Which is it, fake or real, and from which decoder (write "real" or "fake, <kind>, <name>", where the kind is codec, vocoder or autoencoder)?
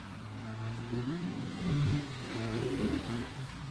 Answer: fake, codec, SNAC